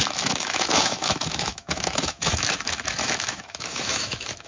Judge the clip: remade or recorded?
remade